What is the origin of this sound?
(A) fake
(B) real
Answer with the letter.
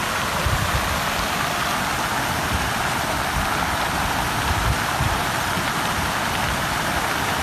A